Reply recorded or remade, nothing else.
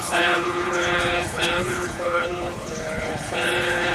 remade